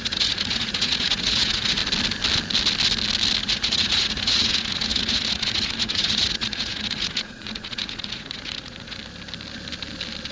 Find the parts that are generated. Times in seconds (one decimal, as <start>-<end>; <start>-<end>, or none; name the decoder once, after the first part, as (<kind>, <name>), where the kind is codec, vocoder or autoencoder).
0.0-1.8 (vocoder, Vocos); 3.4-9.0